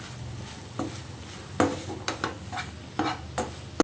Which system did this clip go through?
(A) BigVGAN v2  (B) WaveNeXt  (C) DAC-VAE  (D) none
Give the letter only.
D